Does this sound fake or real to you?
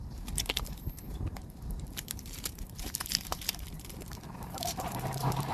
fake